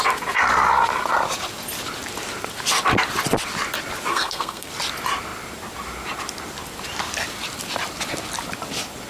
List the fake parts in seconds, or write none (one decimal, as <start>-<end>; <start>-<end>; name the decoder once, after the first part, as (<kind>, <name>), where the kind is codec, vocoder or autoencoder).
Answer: 4.1-4.7 (codec, SNAC)